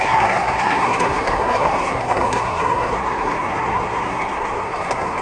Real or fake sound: fake